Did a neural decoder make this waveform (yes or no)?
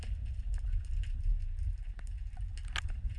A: no